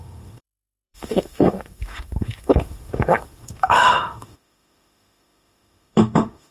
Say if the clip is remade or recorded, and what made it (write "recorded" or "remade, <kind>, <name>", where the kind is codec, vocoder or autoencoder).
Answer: remade, autoencoder, DAC-VAE